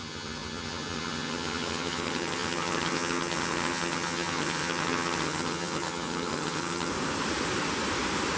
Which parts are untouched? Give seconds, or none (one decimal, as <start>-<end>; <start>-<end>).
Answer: 6.9-8.4